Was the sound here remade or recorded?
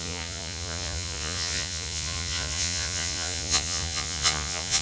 remade